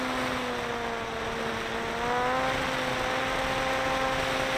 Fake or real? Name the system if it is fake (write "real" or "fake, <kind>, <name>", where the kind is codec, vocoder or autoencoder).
real